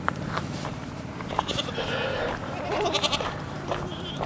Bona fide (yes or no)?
no